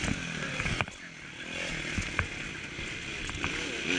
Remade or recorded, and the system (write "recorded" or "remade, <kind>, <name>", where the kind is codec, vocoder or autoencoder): recorded